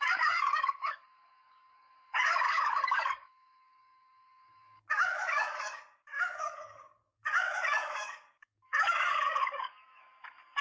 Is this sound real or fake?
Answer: fake